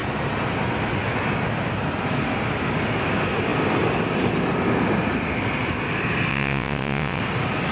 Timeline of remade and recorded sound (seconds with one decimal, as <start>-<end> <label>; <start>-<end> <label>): 0.0-6.3 recorded; 6.3-7.2 remade; 7.2-7.7 recorded